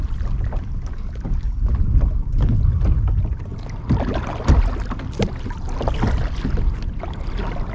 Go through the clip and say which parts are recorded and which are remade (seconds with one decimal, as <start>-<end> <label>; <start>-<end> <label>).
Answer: 0.0-7.7 recorded